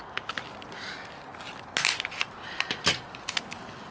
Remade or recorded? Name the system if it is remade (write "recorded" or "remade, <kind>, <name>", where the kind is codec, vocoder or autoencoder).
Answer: recorded